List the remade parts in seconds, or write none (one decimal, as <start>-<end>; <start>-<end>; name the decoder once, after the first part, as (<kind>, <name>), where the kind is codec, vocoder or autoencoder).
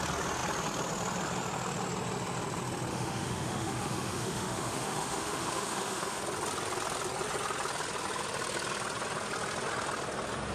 2.9-6.2 (autoencoder, DAC-VAE)